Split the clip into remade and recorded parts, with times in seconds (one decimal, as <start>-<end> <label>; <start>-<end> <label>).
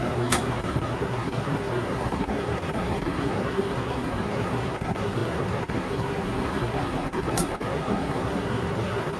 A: 0.0-9.2 remade